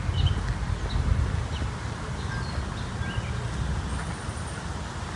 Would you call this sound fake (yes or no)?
no